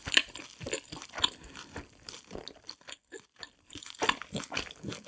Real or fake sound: fake